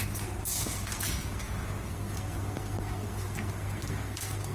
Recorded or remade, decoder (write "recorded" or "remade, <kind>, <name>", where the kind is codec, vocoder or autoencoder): remade, codec, SNAC